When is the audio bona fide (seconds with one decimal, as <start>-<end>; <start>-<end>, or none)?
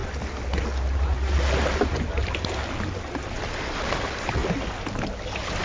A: 0.0-3.4; 4.4-5.1